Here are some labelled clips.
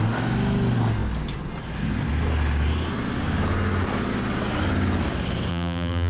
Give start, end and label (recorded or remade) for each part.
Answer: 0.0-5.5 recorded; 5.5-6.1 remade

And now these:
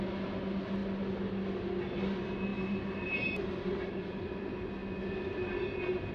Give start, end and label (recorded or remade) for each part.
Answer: 0.0-2.5 recorded; 2.5-3.9 remade; 3.9-6.1 recorded

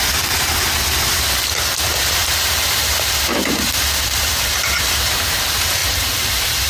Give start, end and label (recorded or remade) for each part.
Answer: 0.0-2.2 recorded; 2.2-5.3 remade; 5.3-5.8 recorded; 5.8-6.7 remade

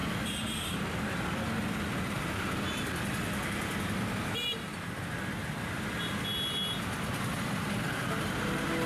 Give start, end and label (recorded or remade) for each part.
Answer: 0.0-1.2 remade; 1.2-8.9 recorded